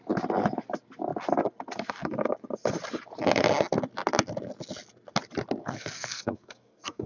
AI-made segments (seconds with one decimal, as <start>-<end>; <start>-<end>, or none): 5.6-7.1